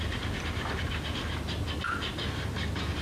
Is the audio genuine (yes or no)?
yes